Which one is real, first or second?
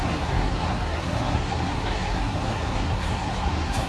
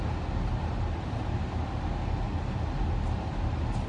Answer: second